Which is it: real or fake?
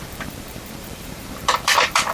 fake